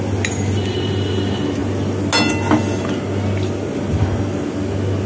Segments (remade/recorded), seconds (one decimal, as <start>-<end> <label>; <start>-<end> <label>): 0.0-5.1 recorded